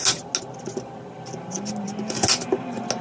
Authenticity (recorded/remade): recorded